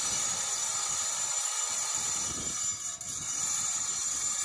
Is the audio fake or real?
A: real